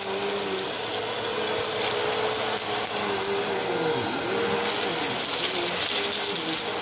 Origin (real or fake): real